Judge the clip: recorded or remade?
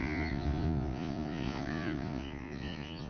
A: remade